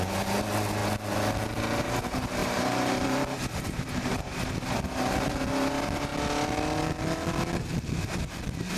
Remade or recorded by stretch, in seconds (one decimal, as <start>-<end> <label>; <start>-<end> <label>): 0.0-2.4 recorded; 2.4-4.6 remade; 4.6-8.8 recorded